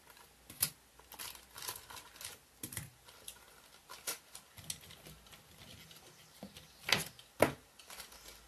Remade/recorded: recorded